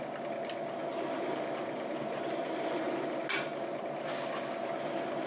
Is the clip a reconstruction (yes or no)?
no